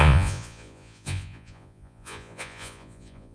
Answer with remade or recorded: remade